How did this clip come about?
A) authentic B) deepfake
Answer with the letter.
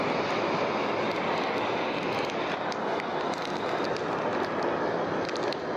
A